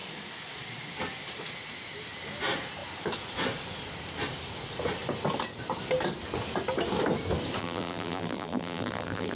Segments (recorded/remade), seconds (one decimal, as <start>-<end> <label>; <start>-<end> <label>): 0.0-7.6 recorded; 7.6-9.4 remade